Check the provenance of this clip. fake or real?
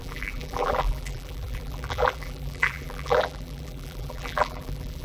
fake